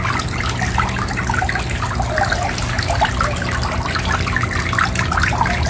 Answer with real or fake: real